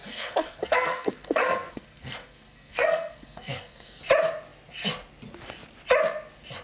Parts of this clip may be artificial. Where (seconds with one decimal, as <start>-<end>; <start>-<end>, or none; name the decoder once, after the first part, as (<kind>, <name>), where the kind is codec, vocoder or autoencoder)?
0.0-4.0 (codec, SNAC)